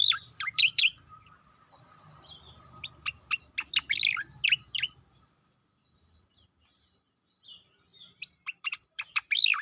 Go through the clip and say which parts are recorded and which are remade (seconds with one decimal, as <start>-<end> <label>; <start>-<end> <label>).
0.0-0.9 remade; 0.9-4.6 recorded; 4.6-9.6 remade